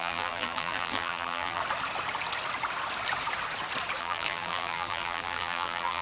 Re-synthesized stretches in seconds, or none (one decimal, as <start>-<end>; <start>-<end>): 0.0-1.6; 4.0-6.0